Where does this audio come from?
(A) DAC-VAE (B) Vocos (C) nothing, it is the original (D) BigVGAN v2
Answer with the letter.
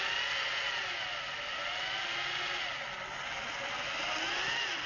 C